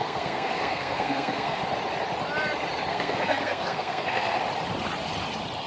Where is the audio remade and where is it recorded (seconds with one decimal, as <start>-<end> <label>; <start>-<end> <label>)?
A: 0.0-1.6 remade; 1.6-2.9 recorded; 2.9-4.4 remade; 4.4-5.7 recorded